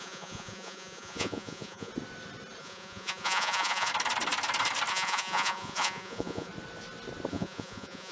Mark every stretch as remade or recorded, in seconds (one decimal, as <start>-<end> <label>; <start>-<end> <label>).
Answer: 0.0-1.9 remade; 1.9-2.6 recorded; 2.6-3.9 remade; 3.9-4.9 recorded; 4.9-6.5 remade; 6.5-7.3 recorded; 7.3-8.1 remade